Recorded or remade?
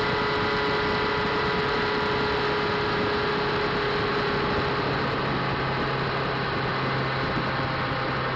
recorded